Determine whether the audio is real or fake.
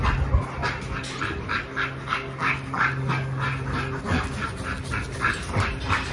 real